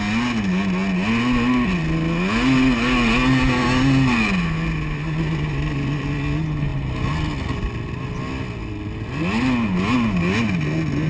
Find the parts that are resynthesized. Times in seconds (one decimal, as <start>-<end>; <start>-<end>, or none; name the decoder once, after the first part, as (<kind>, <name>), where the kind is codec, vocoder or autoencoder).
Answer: none